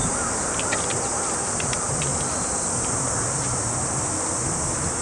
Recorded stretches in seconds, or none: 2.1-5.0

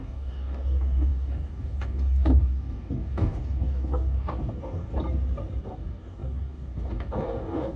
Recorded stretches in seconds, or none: 4.9-5.6